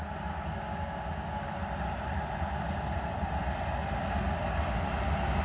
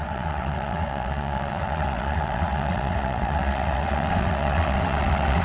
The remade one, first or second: second